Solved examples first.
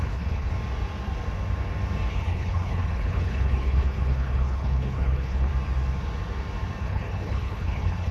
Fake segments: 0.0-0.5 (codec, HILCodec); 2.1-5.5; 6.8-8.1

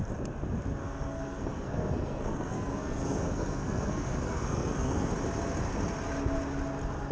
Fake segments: 0.8-5.1 (codec, SNAC)

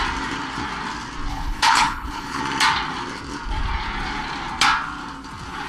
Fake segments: 1.3-2.4 (codec, HILCodec)

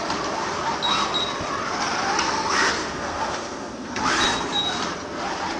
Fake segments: 2.8-4.0 (codec, SNAC)

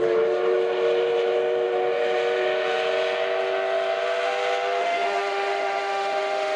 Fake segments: 4.8-6.6 (autoencoder, DAC-VAE)

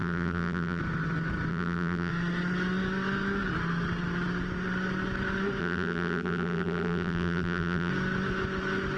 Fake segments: 0.0-0.8 (vocoder, BigVGAN v2); 1.5-2.1; 5.6-7.9

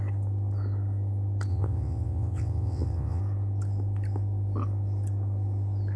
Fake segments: 1.5-3.2 (vocoder, WaveNeXt)

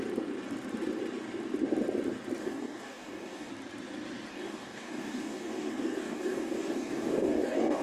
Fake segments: 2.4-3.5 (codec, DAC); 4.3-7.8